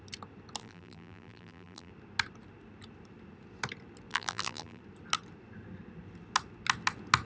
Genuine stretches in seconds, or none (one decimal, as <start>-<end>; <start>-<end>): 0.0-0.6; 1.9-4.1; 4.8-7.3